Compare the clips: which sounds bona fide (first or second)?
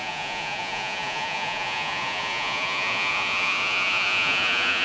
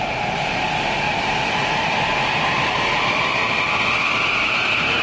second